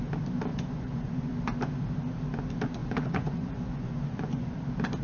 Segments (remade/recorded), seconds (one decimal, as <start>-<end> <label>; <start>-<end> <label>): 0.0-0.5 recorded; 0.5-1.4 remade; 1.4-2.8 recorded; 2.8-4.5 remade; 4.5-5.0 recorded